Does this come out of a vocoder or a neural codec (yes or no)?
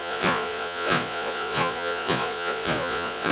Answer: yes